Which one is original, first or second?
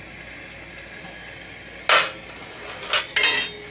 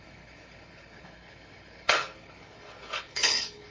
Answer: first